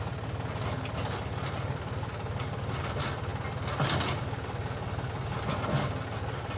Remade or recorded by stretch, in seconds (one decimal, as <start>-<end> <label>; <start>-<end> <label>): 0.0-6.6 recorded